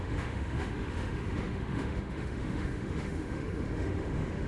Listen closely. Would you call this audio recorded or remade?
remade